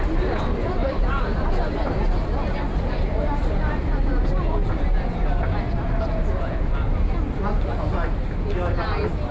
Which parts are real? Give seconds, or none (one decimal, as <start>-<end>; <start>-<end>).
0.0-0.8; 1.6-9.3